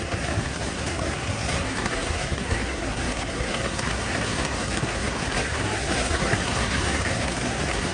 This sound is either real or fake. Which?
fake